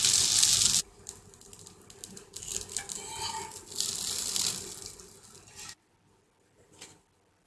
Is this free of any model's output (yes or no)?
yes